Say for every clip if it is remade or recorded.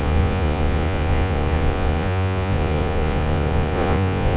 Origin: remade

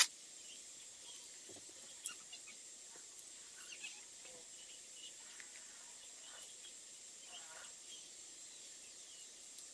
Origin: recorded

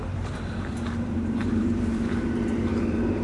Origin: remade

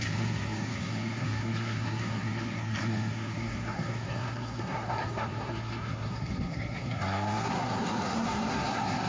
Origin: remade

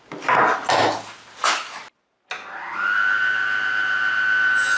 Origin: recorded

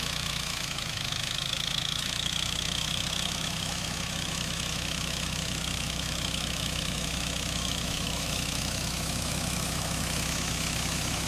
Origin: remade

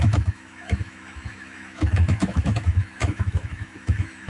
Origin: remade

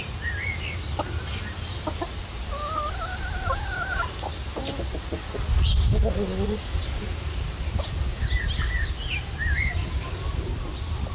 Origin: recorded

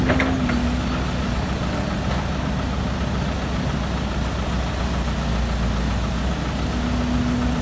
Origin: recorded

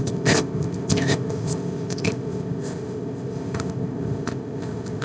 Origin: remade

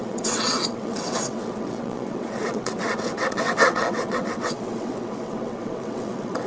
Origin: remade